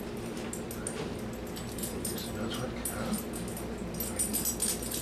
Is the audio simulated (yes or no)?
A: no